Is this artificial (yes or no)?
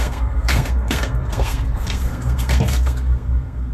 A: yes